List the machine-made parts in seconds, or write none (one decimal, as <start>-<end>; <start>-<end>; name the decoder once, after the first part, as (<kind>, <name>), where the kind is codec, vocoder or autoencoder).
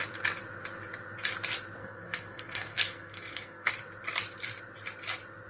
1.8-3.7 (codec, SNAC)